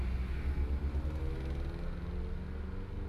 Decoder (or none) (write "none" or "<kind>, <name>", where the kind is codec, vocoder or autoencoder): none